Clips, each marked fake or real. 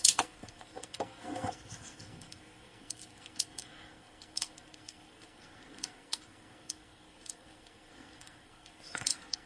fake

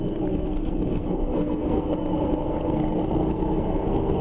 fake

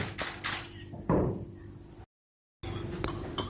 real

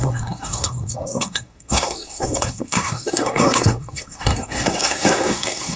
fake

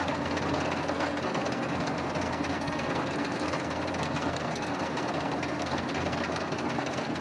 fake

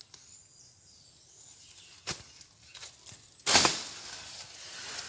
real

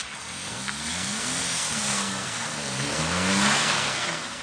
fake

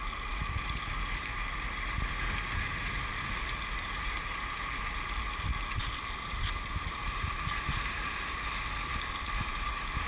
real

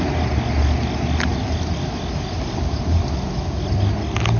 real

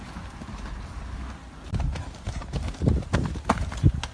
real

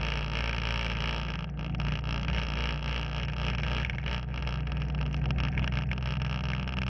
real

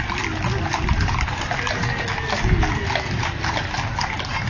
real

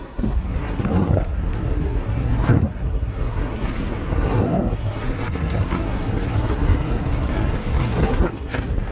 fake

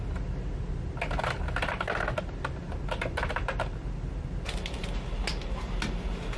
real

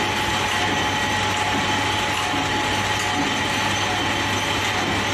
real